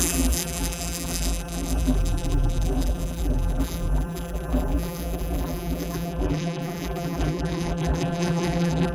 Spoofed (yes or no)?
yes